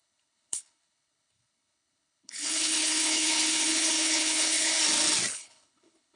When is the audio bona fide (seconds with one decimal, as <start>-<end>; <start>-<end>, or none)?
4.7-5.3